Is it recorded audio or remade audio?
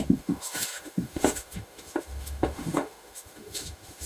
remade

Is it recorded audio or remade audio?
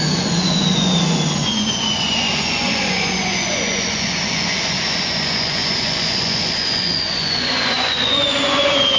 remade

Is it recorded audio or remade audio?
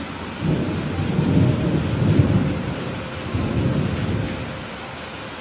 recorded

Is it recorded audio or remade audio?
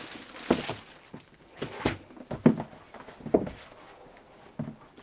recorded